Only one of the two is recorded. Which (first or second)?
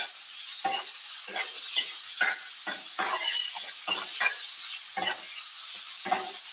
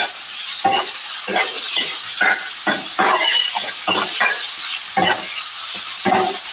first